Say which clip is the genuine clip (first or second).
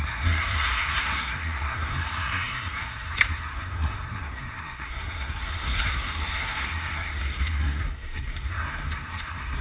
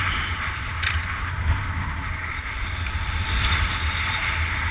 second